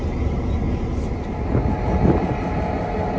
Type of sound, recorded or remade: recorded